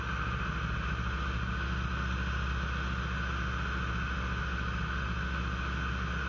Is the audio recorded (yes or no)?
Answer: yes